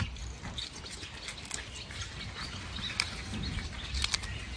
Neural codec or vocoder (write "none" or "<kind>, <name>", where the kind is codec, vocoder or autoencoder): none